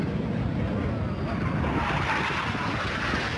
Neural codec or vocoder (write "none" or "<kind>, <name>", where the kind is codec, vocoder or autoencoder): none